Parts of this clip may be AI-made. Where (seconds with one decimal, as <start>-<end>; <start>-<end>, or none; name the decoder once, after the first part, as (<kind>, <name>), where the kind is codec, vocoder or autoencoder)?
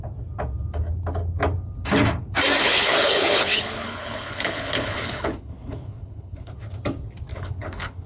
2.6-6.5 (codec, HILCodec); 7.3-8.1